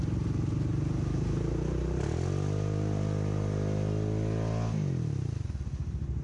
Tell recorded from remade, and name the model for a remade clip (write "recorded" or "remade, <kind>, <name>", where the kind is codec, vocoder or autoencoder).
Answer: recorded